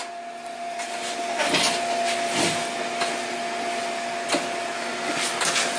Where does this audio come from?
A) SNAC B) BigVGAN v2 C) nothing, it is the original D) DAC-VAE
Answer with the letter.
C